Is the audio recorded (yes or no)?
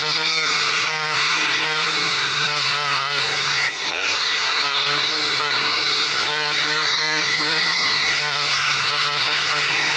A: no